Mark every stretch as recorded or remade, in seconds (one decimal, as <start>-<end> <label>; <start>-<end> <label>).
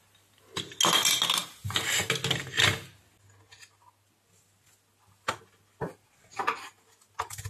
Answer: 0.0-7.5 recorded